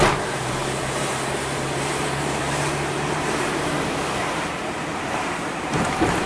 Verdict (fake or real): fake